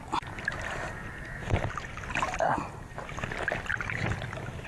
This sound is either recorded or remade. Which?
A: recorded